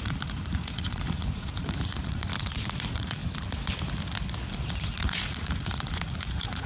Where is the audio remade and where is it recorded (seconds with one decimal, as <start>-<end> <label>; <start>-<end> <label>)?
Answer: 0.0-2.3 remade; 2.3-2.8 recorded; 2.8-3.2 remade; 3.2-4.7 recorded; 4.7-6.7 remade